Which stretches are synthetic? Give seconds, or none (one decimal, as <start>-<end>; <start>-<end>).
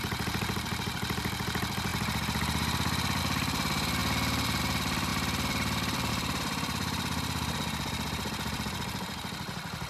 0.0-1.9; 3.2-4.0; 4.6-9.9